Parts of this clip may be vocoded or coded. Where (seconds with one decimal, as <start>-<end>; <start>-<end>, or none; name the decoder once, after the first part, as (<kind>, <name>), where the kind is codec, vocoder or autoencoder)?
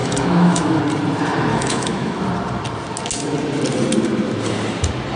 0.0-0.8 (autoencoder, DAC-VAE); 1.5-2.2